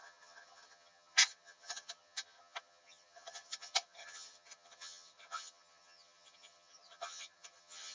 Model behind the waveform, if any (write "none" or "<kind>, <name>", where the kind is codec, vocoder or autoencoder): vocoder, HiFi-GAN